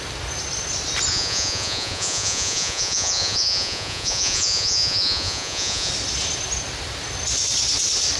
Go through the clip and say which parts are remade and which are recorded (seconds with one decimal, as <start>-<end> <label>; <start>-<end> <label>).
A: 0.0-1.1 recorded; 1.1-5.9 remade; 5.9-8.2 recorded